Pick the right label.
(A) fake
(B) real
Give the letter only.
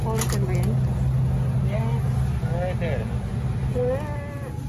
B